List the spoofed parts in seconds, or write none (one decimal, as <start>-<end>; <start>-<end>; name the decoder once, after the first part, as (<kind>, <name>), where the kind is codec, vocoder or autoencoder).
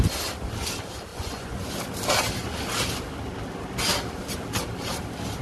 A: 1.1-1.7 (vocoder, Vocos)